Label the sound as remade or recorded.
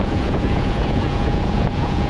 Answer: remade